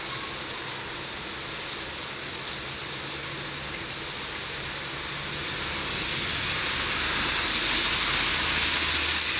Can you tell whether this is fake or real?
real